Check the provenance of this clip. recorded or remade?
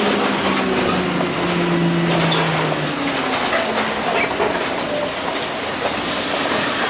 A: recorded